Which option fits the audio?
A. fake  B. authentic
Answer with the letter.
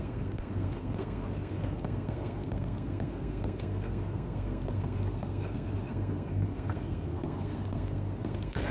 A